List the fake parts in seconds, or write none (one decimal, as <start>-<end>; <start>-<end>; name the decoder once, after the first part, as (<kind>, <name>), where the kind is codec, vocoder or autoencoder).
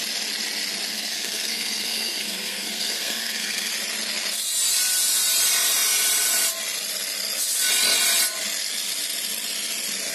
0.9-3.7 (codec, SNAC)